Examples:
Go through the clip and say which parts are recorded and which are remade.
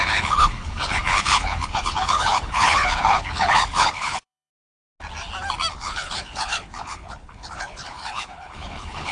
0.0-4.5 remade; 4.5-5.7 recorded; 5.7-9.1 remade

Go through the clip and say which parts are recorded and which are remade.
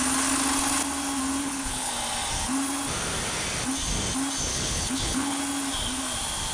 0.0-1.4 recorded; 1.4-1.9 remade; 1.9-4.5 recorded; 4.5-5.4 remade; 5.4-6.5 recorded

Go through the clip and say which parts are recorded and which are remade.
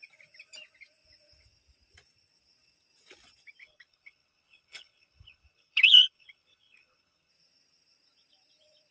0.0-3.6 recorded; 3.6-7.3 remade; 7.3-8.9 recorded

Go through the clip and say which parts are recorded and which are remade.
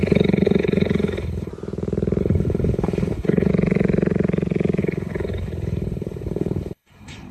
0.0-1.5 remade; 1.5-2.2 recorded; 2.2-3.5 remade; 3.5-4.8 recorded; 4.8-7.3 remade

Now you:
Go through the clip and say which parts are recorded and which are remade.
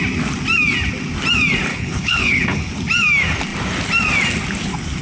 0.0-1.7 recorded; 1.7-2.7 remade; 2.7-5.0 recorded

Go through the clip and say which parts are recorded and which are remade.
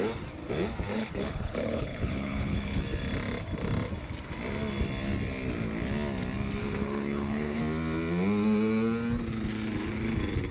0.0-0.9 recorded; 0.9-2.8 remade; 2.8-6.6 recorded; 6.6-7.6 remade; 7.6-10.5 recorded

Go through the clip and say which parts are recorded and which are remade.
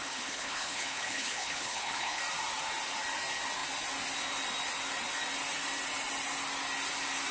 0.0-2.2 remade; 2.2-7.3 recorded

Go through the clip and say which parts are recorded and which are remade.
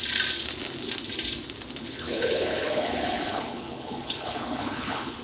0.0-1.8 recorded; 1.8-5.2 remade